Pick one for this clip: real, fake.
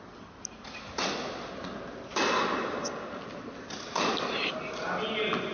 real